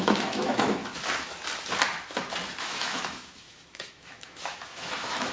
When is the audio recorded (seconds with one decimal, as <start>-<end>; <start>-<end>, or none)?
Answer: 0.8-2.6

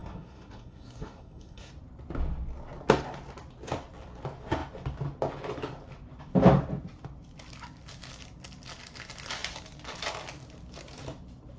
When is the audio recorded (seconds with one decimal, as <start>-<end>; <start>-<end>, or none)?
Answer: 1.7-11.6

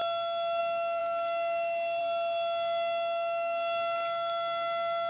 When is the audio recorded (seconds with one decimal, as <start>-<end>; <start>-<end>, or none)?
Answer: 0.0-5.1

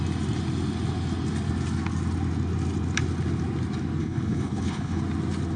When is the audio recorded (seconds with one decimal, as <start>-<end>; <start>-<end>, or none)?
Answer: 0.0-4.0; 5.0-5.6

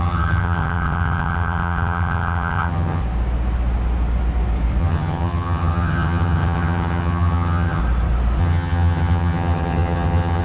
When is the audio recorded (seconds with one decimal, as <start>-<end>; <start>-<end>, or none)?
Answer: 3.0-4.8; 7.8-8.4

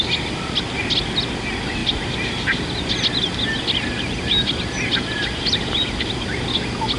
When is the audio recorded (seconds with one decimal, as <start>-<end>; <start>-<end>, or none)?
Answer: 0.0-7.0

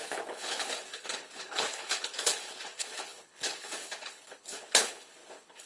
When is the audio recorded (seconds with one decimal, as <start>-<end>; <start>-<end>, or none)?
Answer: none